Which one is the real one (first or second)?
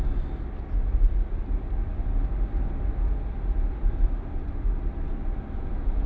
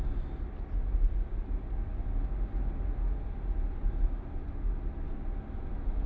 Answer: second